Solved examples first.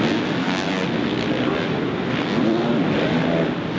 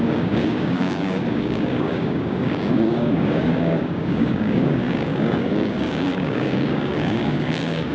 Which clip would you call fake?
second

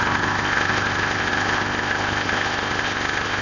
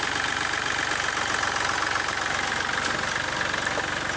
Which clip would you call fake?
first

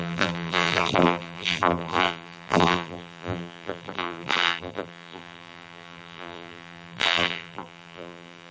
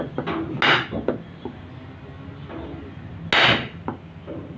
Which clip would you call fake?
first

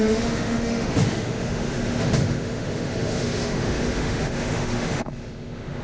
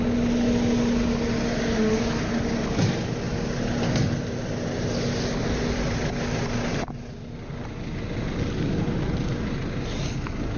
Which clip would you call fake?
first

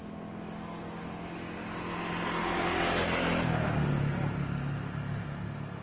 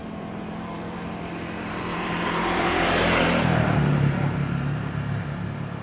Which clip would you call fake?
second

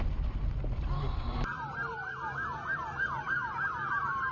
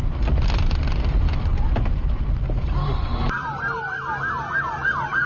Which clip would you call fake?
first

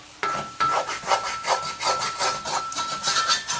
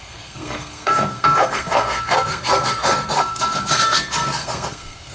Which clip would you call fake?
second